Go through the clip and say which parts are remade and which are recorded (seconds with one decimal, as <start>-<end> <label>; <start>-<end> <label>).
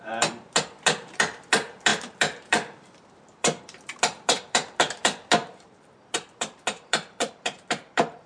0.0-8.3 remade